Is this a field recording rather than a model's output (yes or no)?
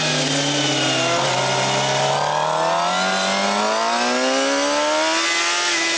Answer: yes